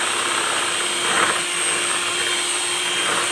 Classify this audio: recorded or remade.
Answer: recorded